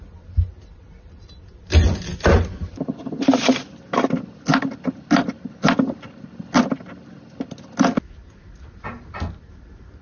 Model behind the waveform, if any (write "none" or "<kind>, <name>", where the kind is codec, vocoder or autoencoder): none